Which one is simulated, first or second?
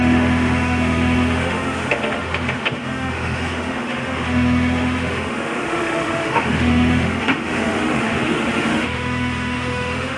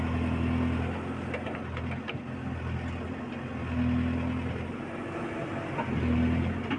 first